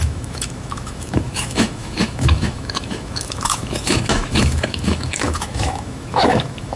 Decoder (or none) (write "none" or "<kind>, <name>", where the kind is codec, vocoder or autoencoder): autoencoder, DAC-VAE